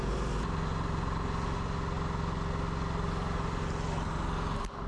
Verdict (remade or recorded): recorded